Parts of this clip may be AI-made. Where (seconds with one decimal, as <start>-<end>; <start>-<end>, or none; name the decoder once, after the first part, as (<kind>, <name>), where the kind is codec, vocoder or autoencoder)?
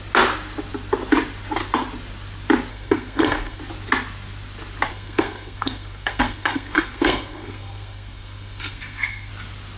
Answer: 2.7-3.6 (codec, SNAC); 4.9-9.3